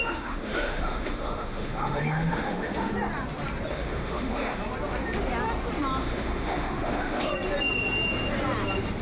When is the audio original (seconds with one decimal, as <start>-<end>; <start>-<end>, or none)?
2.9-3.7; 4.6-6.0; 7.3-9.0